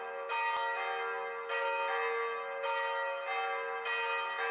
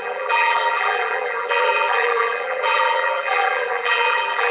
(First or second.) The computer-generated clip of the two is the second